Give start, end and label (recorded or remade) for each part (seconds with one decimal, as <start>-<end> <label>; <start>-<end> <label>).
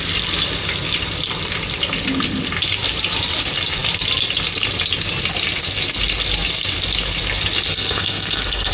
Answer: 0.0-7.7 recorded; 7.7-8.7 remade